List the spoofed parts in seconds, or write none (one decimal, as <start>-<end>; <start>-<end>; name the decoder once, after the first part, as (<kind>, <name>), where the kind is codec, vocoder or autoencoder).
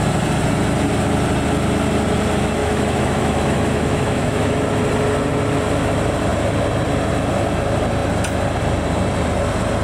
2.6-4.6 (autoencoder, DAC-VAE)